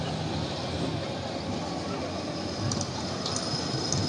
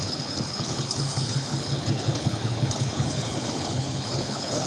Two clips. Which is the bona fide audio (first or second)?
first